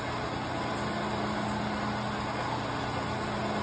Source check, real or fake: real